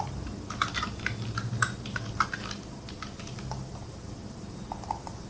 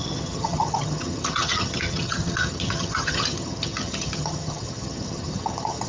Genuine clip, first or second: first